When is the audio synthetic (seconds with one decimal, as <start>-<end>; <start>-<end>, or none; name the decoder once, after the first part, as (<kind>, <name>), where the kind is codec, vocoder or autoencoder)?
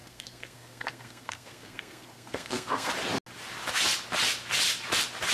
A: 0.0-2.9 (codec, SNAC)